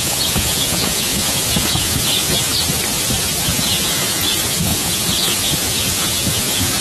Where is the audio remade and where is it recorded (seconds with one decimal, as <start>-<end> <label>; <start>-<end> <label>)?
0.0-2.5 remade; 2.5-3.3 recorded; 3.3-6.8 remade